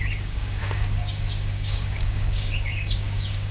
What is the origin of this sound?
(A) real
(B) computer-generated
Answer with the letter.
B